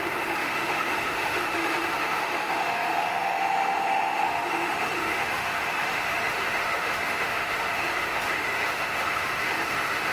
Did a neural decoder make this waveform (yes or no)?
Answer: yes